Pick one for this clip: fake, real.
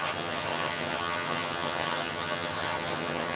fake